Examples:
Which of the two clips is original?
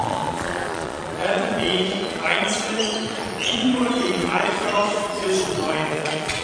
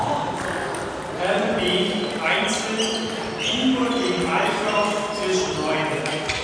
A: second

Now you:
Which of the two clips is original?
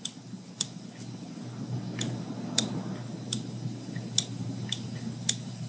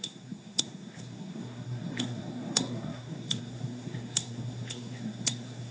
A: first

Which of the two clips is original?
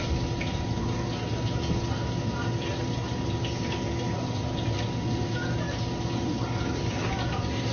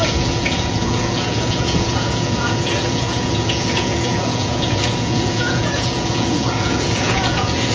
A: first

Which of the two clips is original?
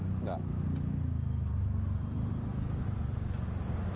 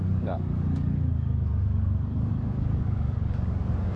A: first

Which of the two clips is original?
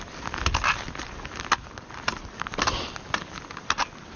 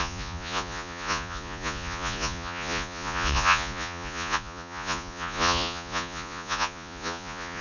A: first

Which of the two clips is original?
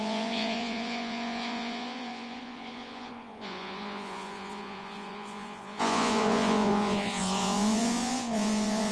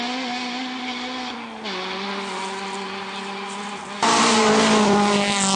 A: second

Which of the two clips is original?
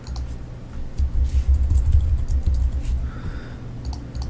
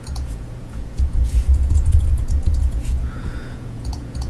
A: first